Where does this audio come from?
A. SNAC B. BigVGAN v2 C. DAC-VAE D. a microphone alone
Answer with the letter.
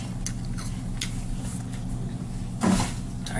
D